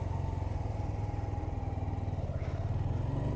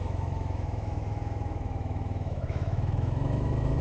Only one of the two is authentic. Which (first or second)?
first